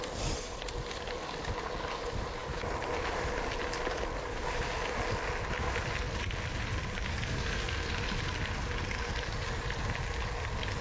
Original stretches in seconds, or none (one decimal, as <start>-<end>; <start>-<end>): 0.0-7.1; 7.9-10.8